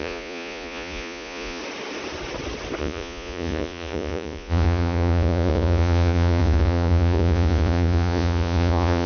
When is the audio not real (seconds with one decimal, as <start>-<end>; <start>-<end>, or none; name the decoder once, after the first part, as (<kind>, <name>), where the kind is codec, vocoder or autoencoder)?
0.0-1.6 (vocoder, Vocos); 2.8-9.1